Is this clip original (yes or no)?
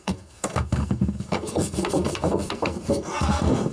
no